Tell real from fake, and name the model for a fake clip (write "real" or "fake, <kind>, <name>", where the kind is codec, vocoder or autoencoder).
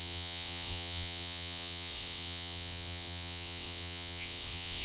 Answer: fake, vocoder, WaveNeXt